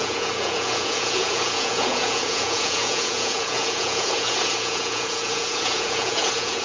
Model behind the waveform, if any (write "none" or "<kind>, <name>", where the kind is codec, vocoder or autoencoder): vocoder, Vocos